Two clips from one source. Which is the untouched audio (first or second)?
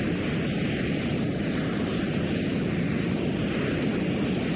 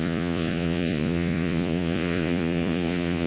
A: first